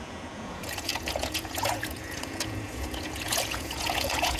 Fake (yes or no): yes